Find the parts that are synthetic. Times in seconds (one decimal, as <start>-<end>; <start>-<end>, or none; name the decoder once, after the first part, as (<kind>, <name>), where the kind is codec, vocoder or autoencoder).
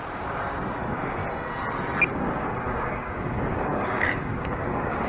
0.0-1.2 (codec, DAC); 2.1-5.1